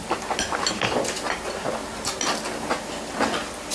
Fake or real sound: real